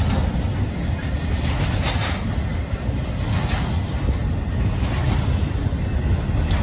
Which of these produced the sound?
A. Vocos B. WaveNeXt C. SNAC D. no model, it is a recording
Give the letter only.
D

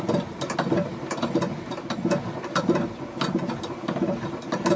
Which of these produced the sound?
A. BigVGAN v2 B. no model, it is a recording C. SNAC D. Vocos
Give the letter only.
B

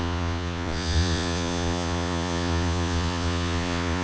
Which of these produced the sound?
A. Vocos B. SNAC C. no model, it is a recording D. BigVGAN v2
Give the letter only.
A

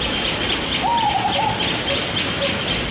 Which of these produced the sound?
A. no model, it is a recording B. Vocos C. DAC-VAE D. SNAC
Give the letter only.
A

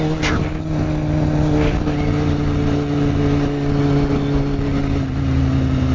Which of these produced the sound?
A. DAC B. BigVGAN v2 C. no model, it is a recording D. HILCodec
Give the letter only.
C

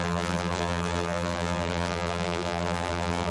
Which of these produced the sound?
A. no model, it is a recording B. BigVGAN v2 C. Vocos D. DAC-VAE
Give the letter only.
B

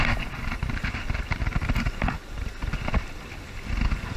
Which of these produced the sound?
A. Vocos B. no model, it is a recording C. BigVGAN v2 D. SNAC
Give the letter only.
B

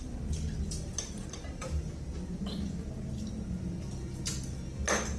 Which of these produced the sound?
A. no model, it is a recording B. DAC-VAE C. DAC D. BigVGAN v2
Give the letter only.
A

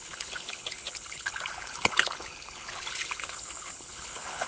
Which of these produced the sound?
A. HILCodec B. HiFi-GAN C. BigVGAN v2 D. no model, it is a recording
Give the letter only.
A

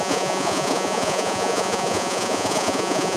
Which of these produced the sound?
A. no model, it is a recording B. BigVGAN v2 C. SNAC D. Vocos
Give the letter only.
D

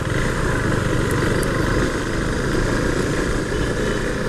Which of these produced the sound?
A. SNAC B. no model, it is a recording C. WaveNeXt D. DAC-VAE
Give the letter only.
B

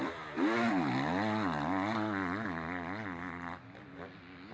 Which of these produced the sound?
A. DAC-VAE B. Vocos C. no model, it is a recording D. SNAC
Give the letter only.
C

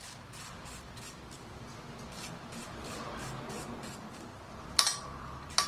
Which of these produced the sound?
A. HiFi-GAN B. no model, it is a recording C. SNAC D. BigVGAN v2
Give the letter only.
D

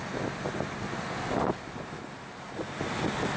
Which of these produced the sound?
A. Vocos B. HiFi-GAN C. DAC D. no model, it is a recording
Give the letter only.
D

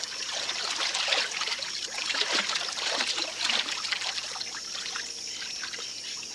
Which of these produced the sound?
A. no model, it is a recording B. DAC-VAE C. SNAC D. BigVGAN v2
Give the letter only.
A